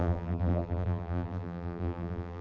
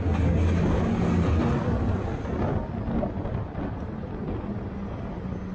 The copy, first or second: first